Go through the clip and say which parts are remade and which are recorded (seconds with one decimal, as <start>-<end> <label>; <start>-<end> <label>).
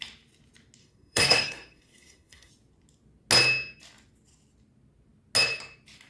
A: 0.0-0.8 recorded; 0.8-2.5 remade; 2.5-6.1 recorded